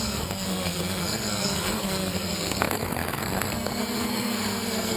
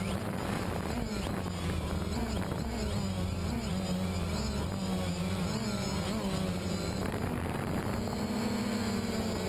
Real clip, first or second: second